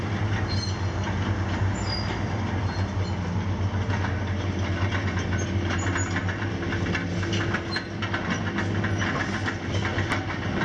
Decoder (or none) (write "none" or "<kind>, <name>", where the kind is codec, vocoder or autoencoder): none